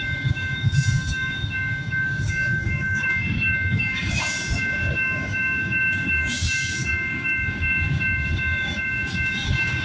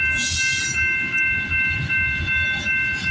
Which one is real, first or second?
second